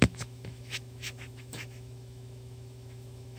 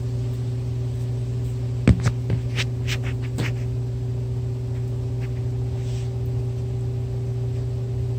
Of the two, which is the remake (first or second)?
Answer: first